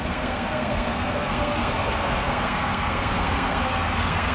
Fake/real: fake